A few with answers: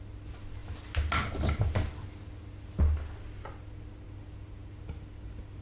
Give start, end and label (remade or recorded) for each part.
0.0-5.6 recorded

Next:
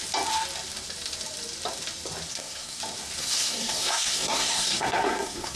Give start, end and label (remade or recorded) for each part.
0.0-2.3 recorded; 2.3-2.8 remade; 2.8-3.2 recorded; 3.2-5.6 remade